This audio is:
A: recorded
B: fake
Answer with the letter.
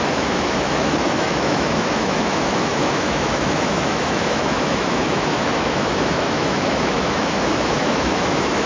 B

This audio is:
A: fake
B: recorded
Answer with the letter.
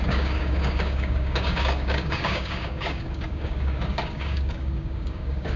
A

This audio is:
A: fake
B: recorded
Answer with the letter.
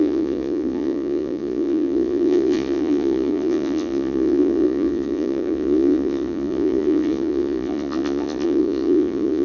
A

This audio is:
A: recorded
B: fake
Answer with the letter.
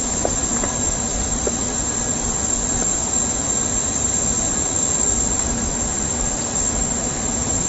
A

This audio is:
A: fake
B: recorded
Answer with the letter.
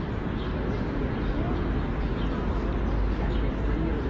B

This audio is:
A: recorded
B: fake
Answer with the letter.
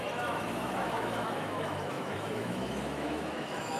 B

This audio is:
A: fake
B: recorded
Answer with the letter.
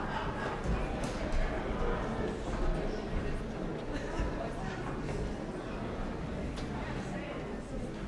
B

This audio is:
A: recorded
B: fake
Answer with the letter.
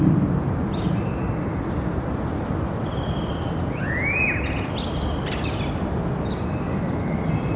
A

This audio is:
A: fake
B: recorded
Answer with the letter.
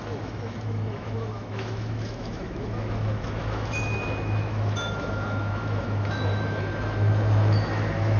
A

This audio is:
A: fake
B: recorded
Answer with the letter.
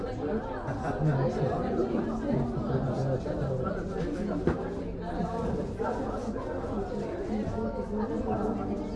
B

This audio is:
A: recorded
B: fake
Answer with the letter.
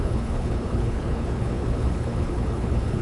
B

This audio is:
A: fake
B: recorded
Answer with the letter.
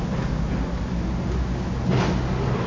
B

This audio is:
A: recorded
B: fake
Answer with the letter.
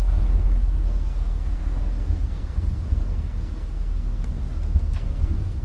B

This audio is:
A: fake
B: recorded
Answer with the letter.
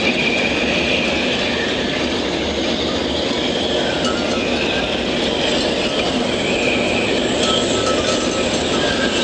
B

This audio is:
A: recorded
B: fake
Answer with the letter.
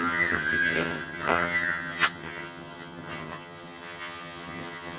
B